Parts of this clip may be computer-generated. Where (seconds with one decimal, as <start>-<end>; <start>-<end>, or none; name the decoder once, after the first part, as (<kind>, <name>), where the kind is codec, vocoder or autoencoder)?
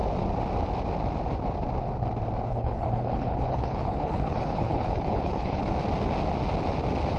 2.5-5.6 (codec, HILCodec)